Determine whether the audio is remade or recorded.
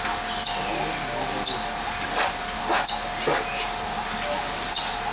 recorded